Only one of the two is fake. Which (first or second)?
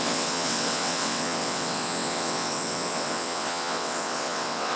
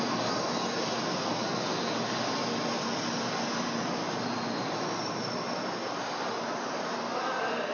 first